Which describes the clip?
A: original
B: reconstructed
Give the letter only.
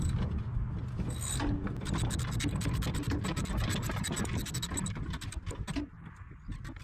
A